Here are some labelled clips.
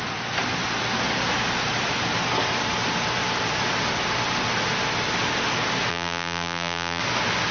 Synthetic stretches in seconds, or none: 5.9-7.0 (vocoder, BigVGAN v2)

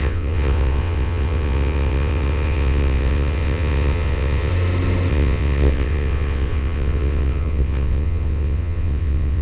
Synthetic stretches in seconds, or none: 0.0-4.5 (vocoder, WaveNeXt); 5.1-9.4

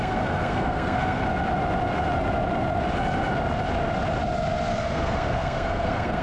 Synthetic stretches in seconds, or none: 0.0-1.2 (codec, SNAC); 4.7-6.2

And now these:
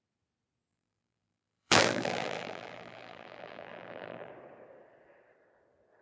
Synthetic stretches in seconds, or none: 0.7-4.3 (vocoder, BigVGAN v2)